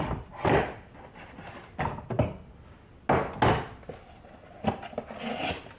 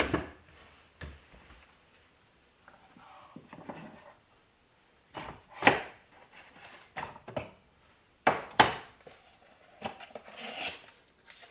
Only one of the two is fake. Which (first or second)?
second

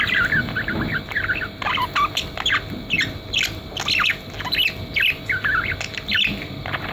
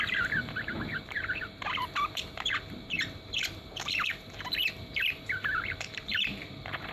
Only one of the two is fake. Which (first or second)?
second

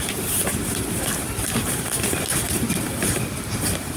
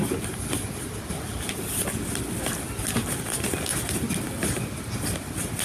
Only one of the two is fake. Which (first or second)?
first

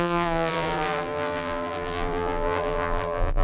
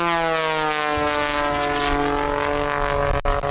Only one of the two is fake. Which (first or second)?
first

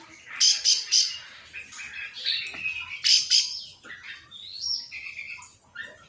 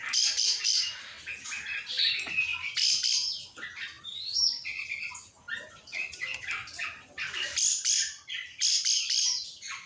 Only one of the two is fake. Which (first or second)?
second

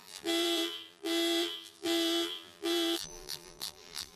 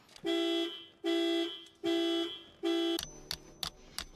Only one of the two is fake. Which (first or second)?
first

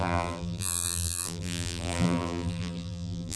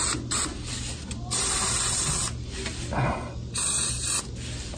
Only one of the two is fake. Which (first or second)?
first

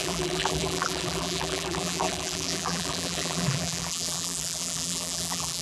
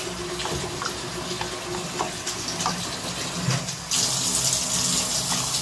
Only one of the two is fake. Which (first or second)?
first